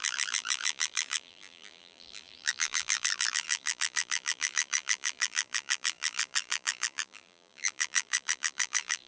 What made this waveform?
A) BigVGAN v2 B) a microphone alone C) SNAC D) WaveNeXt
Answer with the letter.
A